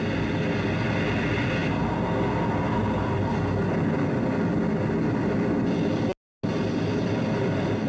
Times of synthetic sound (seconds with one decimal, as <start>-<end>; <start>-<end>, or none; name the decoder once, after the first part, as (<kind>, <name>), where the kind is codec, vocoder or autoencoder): none